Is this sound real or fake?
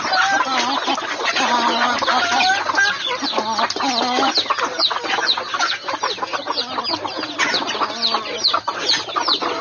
real